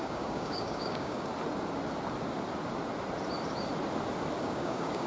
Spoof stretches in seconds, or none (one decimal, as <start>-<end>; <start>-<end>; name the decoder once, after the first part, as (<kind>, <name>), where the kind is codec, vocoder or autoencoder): 0.0-1.3 (codec, DAC); 4.4-5.1